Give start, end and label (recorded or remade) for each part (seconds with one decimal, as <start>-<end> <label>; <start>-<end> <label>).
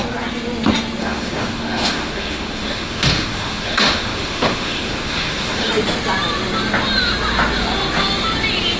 0.0-1.0 recorded; 1.0-5.7 remade; 5.7-8.8 recorded